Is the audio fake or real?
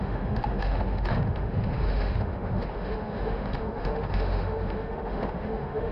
fake